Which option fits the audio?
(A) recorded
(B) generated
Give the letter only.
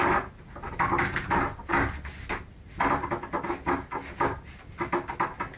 A